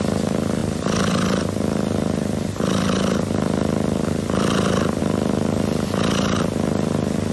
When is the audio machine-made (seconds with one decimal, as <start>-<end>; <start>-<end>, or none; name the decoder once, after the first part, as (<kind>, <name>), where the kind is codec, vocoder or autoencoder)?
none

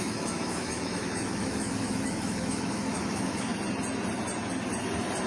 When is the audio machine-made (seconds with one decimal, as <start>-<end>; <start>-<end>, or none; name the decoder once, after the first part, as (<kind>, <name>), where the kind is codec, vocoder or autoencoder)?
0.0-3.5 (autoencoder, DAC-VAE)

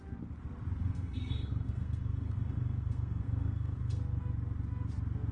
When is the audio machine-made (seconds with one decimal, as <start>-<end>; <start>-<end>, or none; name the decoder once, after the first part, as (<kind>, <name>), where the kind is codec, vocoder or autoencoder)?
0.8-4.0 (codec, SNAC)

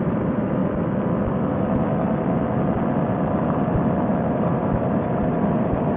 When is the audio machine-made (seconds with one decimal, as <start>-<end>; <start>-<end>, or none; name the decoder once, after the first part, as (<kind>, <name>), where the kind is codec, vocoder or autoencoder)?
0.0-0.6 (vocoder, BigVGAN v2); 4.2-6.0

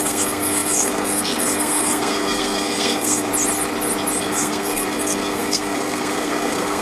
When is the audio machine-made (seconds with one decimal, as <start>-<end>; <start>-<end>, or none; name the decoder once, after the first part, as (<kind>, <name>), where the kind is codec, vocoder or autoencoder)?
0.0-3.3 (codec, SNAC); 4.2-6.8

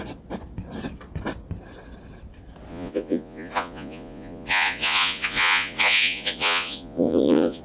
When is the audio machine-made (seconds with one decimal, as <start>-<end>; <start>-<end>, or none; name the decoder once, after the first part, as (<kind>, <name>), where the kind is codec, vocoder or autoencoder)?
2.7-7.6 (vocoder, Vocos)

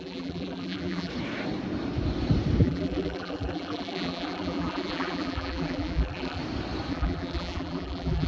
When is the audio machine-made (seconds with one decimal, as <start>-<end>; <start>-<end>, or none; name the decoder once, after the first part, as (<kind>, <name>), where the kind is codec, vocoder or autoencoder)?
0.0-1.1 (vocoder, BigVGAN v2); 2.6-6.4; 6.9-8.3